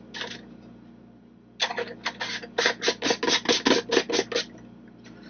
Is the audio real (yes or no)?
yes